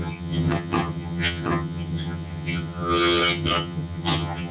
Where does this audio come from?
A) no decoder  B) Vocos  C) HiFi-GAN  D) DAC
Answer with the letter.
C